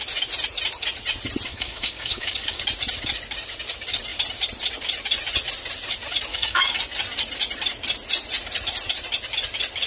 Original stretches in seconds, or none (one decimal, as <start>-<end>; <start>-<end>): 0.0-1.5; 2.6-6.3; 6.8-9.9